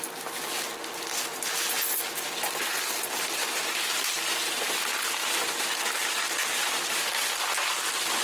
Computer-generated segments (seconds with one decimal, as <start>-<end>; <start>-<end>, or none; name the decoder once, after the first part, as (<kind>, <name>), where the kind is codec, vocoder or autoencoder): none